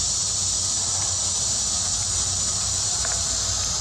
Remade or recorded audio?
recorded